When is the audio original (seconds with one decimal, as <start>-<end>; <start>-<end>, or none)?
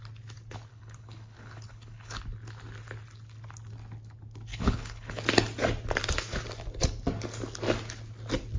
0.0-0.7; 2.2-4.5; 5.2-8.6